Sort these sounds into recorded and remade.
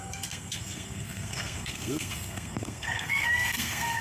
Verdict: remade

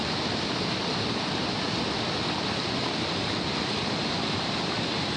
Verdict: recorded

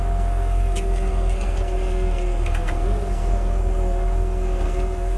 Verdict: remade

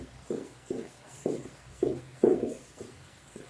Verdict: remade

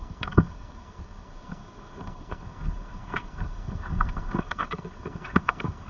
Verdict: remade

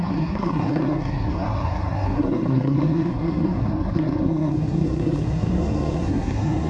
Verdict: remade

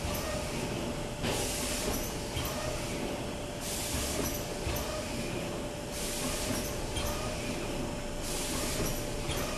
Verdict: recorded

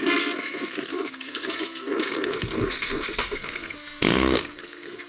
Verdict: remade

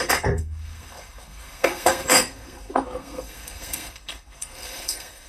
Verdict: remade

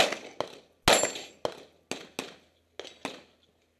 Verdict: recorded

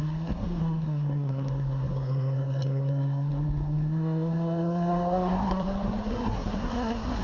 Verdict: remade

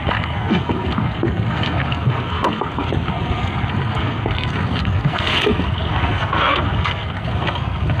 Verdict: remade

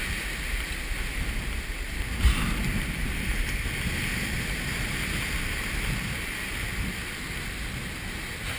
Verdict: recorded